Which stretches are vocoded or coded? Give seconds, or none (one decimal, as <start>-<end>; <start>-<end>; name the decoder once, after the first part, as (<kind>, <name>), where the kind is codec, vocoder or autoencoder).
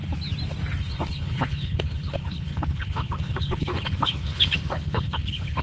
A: 0.8-5.6 (codec, HILCodec)